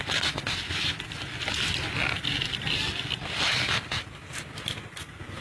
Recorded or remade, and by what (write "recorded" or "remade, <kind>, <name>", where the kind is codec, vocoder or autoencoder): recorded